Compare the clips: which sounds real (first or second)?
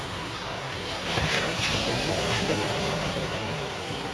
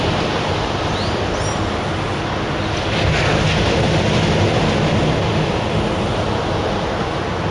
second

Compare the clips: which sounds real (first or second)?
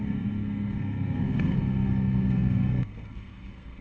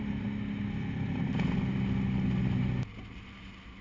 second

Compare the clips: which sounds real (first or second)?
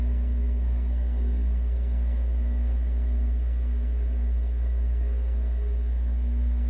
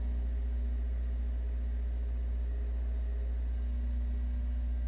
second